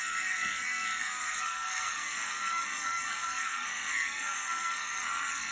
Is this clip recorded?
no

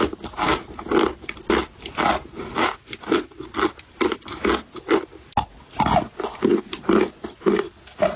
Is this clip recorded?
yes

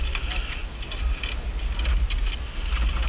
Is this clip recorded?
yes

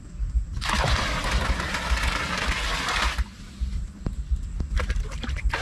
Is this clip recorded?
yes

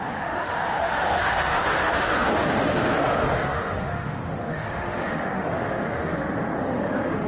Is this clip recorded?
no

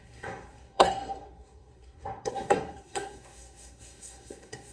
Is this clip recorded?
no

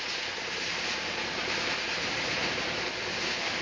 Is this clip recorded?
no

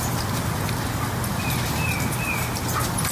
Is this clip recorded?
yes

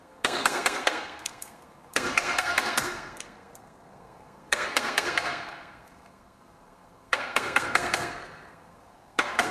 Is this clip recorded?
no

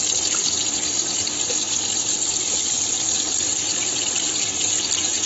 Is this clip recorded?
yes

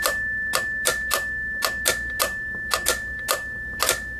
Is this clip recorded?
yes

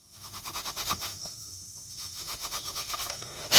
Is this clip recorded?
no